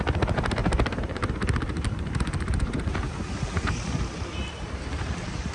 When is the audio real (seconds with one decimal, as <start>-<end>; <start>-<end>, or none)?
0.0-0.6; 2.9-4.4